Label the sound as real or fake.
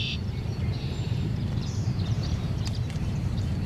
fake